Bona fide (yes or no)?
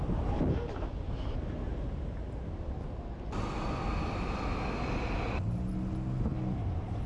yes